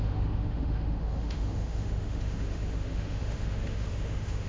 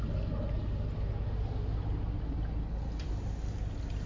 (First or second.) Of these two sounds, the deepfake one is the first